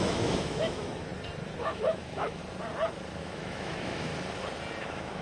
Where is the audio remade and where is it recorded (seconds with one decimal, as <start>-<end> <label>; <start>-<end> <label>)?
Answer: 0.0-1.1 remade; 1.1-1.6 recorded; 1.6-2.4 remade; 2.4-3.2 recorded; 3.2-4.1 remade; 4.1-4.8 recorded; 4.8-5.2 remade